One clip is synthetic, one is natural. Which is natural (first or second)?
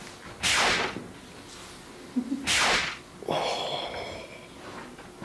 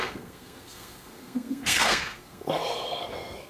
first